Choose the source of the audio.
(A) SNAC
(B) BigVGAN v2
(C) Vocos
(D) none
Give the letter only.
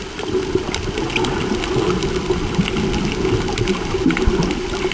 D